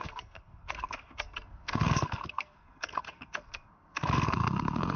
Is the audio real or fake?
fake